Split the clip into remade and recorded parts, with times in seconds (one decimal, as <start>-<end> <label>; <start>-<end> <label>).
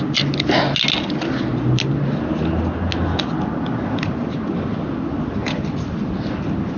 0.0-6.8 recorded